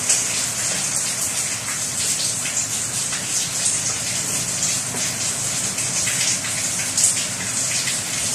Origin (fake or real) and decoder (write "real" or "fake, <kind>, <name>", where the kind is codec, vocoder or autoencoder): real